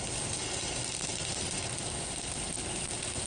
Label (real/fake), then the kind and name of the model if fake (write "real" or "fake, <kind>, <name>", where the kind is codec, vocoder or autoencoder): real